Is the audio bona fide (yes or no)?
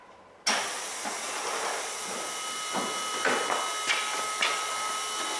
yes